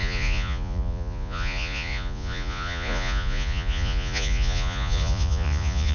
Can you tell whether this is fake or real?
fake